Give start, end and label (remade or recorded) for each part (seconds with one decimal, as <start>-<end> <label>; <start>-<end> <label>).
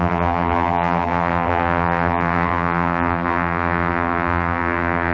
0.0-5.1 remade